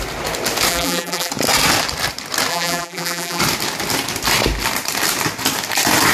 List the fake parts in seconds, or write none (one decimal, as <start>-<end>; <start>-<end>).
0.7-1.3; 2.5-3.4